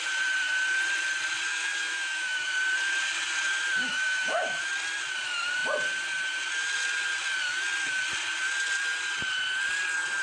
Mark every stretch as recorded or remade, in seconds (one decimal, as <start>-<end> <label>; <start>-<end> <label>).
0.0-1.5 recorded; 1.5-2.4 remade; 2.4-3.8 recorded; 3.8-4.7 remade; 4.7-10.2 recorded